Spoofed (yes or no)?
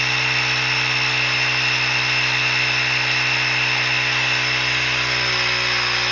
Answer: no